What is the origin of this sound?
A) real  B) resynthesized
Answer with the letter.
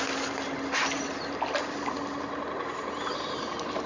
A